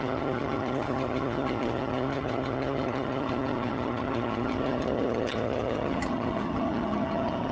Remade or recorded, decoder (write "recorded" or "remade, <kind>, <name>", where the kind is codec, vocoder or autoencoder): remade, vocoder, HiFi-GAN